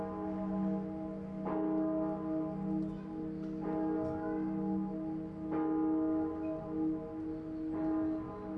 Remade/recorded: recorded